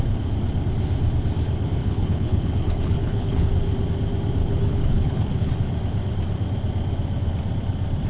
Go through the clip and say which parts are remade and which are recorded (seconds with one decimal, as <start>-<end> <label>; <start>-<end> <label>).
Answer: 0.0-1.8 recorded; 1.8-3.5 remade; 3.5-4.4 recorded; 4.4-5.5 remade; 5.5-8.1 recorded